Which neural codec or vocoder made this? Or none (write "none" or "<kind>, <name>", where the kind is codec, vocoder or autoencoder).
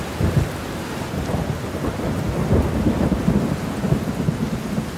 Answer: none